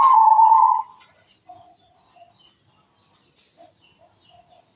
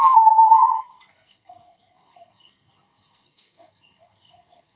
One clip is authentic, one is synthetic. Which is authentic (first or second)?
first